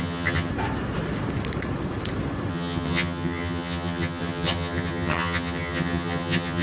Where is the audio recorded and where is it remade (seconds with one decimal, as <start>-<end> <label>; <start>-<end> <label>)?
0.0-0.5 remade; 0.5-2.5 recorded; 2.5-6.6 remade